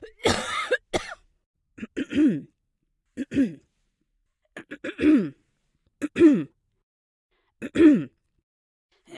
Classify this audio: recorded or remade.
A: recorded